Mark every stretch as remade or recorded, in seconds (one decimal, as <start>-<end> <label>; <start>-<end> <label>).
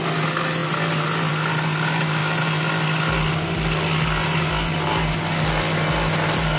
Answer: 0.0-6.6 recorded